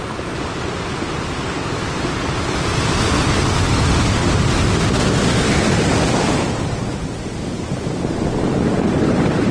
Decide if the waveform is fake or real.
real